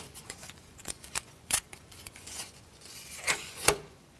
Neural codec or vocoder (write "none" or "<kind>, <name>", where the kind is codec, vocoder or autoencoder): vocoder, Vocos